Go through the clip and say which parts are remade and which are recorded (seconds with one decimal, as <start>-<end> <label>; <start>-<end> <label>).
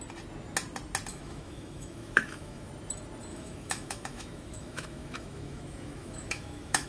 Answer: 0.0-1.1 recorded; 1.1-2.7 remade; 2.7-3.3 recorded; 3.3-6.9 remade